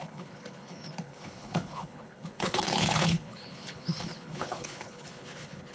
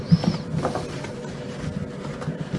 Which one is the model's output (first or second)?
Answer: first